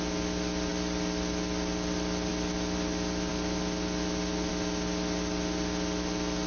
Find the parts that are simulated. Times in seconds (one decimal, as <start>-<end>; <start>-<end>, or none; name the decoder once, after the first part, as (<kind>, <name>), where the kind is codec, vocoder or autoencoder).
none